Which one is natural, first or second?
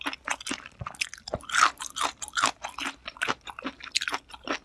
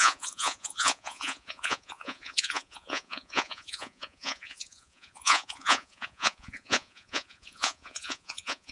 first